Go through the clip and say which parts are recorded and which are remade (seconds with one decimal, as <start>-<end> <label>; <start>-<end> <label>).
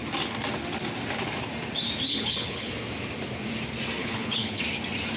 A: 0.0-2.1 recorded; 2.1-2.7 remade; 2.7-4.0 recorded; 4.0-4.6 remade; 4.6-5.2 recorded